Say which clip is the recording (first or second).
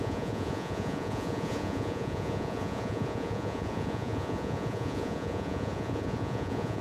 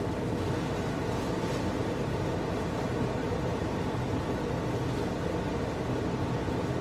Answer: second